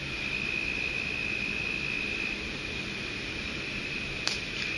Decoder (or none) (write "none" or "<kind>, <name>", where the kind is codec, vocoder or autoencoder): none